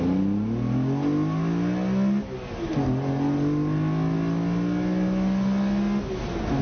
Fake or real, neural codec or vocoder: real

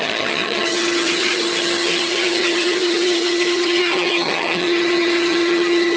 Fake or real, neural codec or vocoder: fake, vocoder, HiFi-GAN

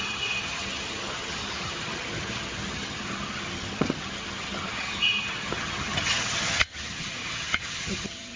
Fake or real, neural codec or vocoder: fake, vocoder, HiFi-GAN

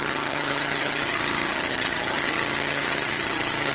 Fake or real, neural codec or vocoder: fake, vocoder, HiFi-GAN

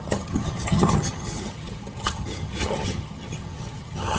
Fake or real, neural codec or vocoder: fake, vocoder, HiFi-GAN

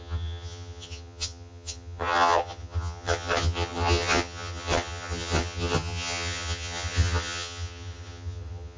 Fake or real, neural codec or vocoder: fake, vocoder, HiFi-GAN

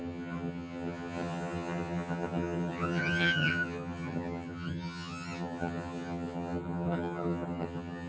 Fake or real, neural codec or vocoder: fake, vocoder, HiFi-GAN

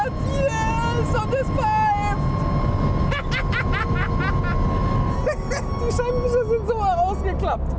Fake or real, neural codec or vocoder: real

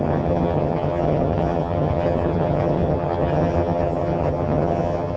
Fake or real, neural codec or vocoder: fake, vocoder, HiFi-GAN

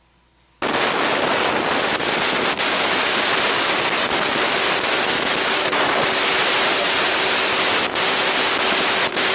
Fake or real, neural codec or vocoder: real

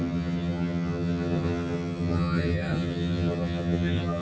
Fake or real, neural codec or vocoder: fake, vocoder, HiFi-GAN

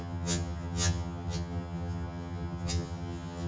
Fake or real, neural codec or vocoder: fake, vocoder, HiFi-GAN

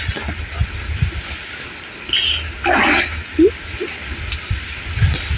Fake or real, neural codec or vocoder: real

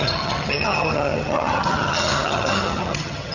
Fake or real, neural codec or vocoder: fake, vocoder, HiFi-GAN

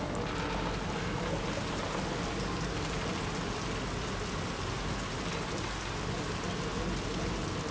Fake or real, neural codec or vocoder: real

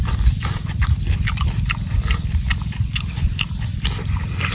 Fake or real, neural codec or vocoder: real